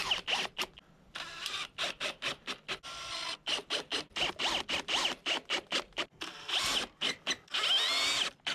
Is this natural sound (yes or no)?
yes